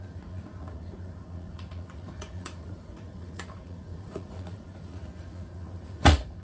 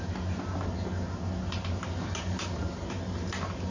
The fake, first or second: first